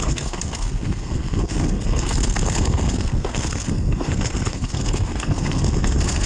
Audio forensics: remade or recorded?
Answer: remade